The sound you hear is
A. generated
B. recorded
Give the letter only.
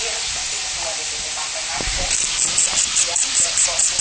B